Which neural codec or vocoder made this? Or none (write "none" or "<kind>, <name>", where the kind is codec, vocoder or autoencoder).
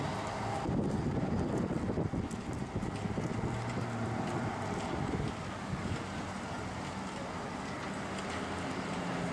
none